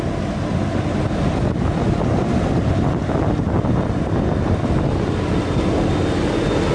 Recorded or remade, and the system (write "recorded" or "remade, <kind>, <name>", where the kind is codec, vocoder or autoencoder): recorded